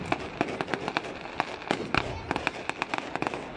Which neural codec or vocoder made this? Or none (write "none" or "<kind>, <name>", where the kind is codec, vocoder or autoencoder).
none